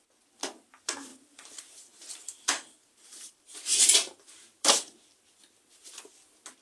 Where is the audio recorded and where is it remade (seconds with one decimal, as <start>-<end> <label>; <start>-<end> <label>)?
0.0-1.1 recorded; 1.1-5.1 remade; 5.1-6.6 recorded